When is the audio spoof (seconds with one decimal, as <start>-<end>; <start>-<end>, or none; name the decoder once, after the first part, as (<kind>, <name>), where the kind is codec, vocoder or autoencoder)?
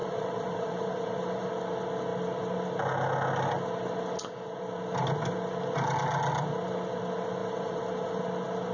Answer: 0.0-1.5 (vocoder, BigVGAN v2); 7.4-8.2